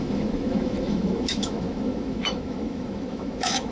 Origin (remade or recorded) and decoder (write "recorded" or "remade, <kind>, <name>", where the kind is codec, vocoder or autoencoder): remade, autoencoder, DAC-VAE